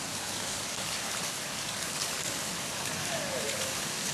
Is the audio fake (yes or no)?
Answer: yes